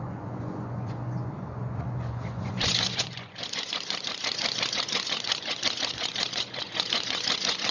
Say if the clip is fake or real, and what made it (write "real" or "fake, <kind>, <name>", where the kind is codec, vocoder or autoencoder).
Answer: fake, vocoder, Vocos